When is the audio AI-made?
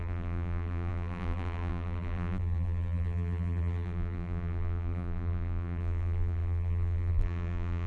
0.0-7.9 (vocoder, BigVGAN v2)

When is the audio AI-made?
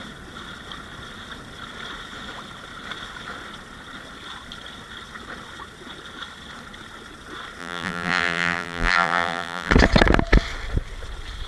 7.6-9.7 (vocoder, BigVGAN v2)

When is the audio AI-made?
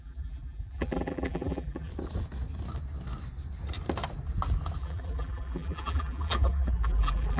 0.0-1.9 (vocoder, BigVGAN v2); 4.8-7.4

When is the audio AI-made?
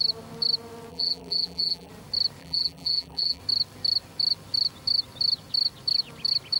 0.9-1.9 (vocoder, BigVGAN v2); 2.4-3.4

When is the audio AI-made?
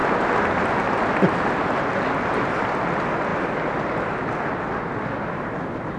none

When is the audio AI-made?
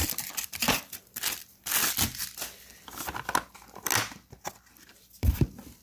0.0-1.5 (vocoder, BigVGAN v2); 4.9-5.8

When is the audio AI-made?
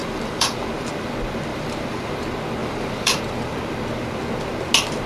0.0-0.7 (vocoder, BigVGAN v2); 1.5-2.1; 2.6-3.2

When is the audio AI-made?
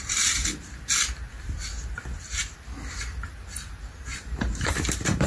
0.0-0.4 (vocoder, BigVGAN v2); 3.6-5.3